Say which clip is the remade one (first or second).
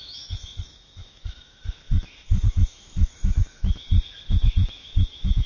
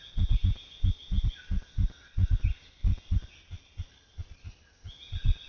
first